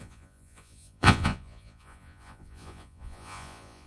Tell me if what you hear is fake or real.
fake